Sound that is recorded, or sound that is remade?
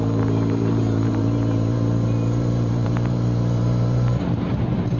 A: remade